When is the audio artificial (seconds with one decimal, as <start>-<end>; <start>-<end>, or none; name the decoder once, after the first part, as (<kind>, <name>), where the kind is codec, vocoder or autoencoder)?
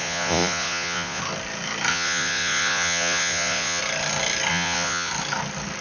0.0-1.2 (vocoder, Vocos); 1.9-3.8; 4.5-5.1